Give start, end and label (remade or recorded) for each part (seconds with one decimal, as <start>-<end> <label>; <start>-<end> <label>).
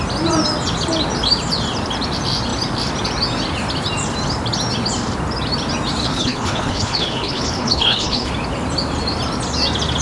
0.0-6.0 recorded; 6.0-8.3 remade; 8.3-10.0 recorded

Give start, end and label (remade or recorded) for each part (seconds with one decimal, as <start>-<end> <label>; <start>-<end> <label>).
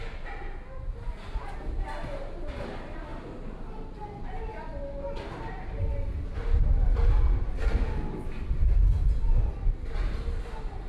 0.0-10.9 recorded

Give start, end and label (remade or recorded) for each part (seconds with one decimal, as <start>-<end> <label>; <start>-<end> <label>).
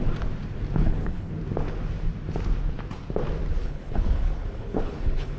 0.0-0.8 recorded; 0.8-1.3 remade; 1.3-3.6 recorded; 3.6-5.4 remade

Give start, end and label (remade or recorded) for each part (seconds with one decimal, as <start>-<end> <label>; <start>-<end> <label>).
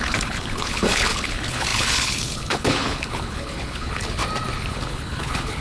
0.0-4.2 remade; 4.2-4.7 recorded; 4.7-5.6 remade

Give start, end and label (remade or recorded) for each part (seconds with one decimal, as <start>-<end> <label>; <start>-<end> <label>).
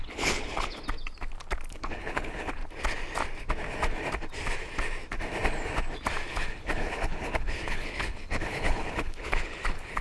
0.0-0.8 remade; 0.8-1.7 recorded; 1.7-2.6 remade; 2.6-6.3 recorded; 6.3-10.0 remade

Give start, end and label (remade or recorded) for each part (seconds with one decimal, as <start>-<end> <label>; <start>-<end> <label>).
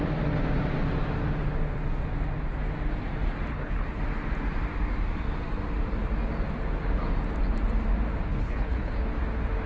0.0-3.5 recorded; 3.5-4.0 remade; 4.0-8.3 recorded; 8.3-8.9 remade; 8.9-9.7 recorded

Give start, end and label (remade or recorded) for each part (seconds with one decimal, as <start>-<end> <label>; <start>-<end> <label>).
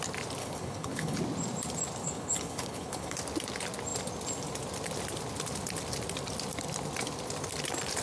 0.0-0.4 recorded; 0.4-1.2 remade; 1.2-2.0 recorded; 2.0-3.2 remade; 3.2-8.0 recorded